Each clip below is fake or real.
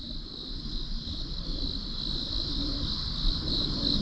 real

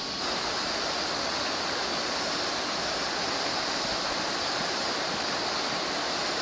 real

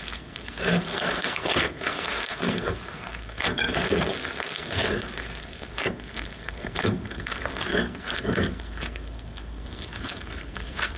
fake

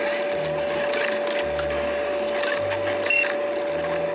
real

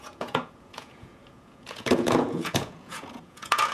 fake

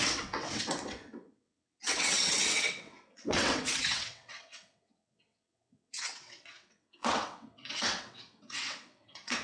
fake